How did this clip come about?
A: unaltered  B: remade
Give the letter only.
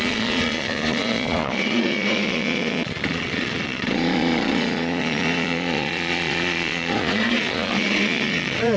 B